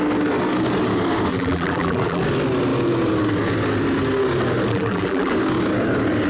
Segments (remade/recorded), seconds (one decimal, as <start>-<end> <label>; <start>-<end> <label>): 0.0-1.3 recorded; 1.3-2.2 remade; 2.2-4.7 recorded; 4.7-5.3 remade; 5.3-6.3 recorded